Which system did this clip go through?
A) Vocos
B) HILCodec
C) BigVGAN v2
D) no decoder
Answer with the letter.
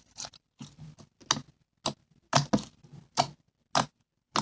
D